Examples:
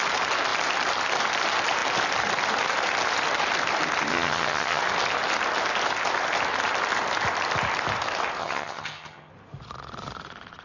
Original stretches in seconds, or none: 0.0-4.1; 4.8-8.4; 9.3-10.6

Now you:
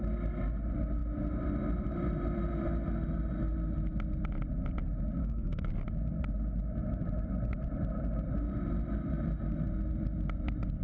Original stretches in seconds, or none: 0.0-5.2; 5.7-10.8